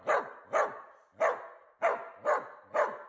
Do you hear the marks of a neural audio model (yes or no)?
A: no